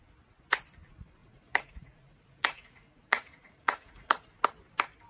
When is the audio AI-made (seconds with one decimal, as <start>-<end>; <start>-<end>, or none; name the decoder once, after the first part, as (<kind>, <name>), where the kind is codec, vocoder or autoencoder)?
1.2-4.3 (vocoder, Vocos)